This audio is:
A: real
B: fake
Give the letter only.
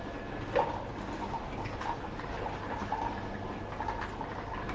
A